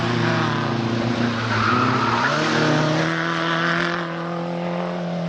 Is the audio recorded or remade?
recorded